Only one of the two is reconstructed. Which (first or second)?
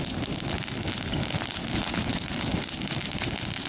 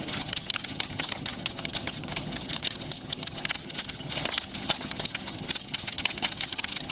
second